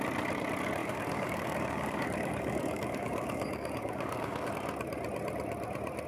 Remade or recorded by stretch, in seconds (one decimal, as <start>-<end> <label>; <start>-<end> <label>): 0.0-0.8 recorded; 0.8-4.5 remade; 4.5-6.1 recorded